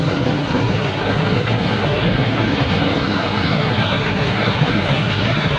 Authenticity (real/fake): fake